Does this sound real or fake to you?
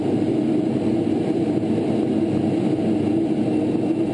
real